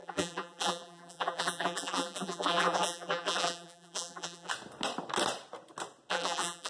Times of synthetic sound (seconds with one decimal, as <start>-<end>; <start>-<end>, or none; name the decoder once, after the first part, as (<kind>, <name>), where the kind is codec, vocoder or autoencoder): 0.0-4.5 (vocoder, BigVGAN v2); 6.1-6.7